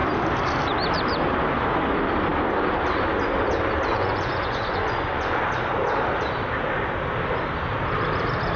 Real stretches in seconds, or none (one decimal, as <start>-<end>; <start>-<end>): 0.0-3.9; 5.4-8.6